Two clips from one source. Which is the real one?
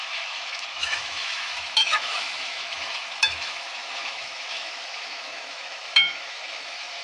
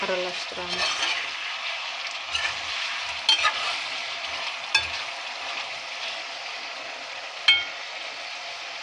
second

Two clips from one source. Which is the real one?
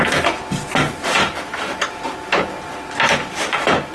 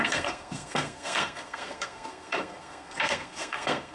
first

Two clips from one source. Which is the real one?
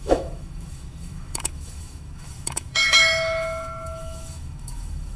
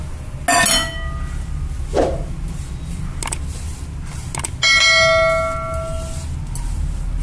second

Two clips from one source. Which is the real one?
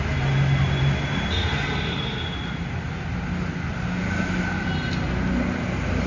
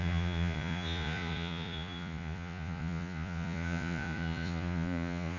first